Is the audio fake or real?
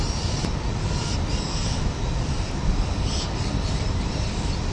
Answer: real